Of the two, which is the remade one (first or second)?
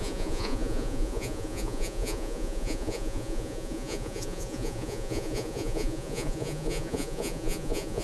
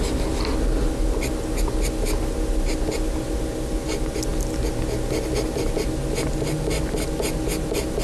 first